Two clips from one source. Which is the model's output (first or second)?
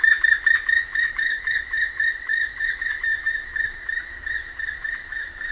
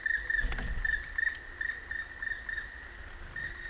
first